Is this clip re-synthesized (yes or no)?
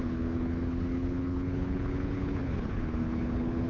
yes